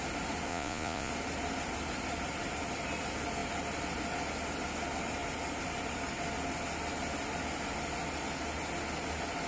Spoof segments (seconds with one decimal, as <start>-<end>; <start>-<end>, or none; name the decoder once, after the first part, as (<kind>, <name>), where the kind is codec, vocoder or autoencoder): 0.5-1.1 (vocoder, Vocos)